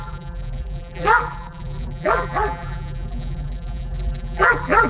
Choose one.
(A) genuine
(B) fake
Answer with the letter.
B